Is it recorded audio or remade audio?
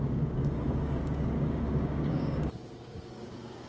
remade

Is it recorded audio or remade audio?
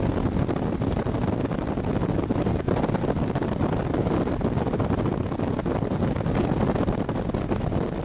recorded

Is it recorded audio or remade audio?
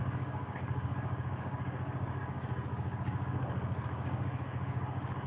remade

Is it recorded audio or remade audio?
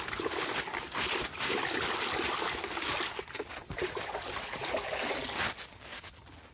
recorded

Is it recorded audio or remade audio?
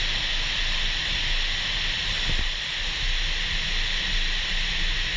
recorded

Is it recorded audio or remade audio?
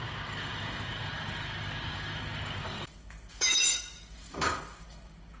remade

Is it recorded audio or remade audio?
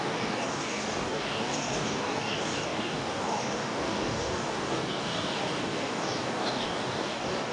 remade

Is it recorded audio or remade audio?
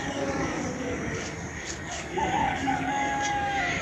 remade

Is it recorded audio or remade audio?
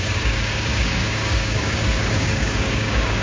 remade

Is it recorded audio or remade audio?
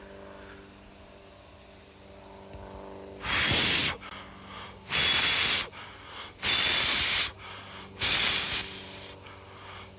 recorded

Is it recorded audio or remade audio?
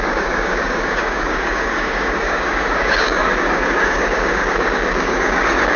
remade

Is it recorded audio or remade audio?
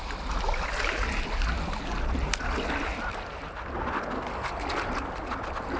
recorded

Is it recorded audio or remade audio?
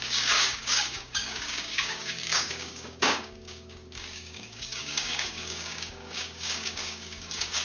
remade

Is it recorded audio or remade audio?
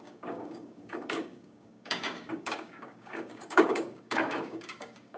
remade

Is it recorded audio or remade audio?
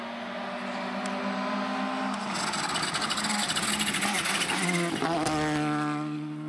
recorded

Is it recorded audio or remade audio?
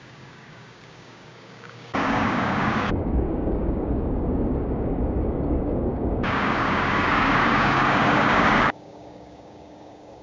remade